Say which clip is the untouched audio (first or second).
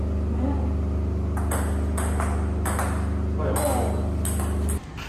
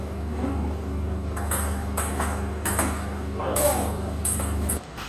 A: first